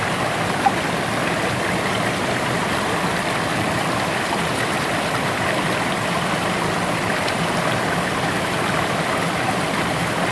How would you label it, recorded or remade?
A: remade